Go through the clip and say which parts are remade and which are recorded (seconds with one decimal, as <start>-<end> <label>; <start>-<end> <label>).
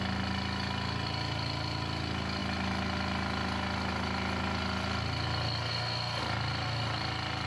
0.0-7.5 recorded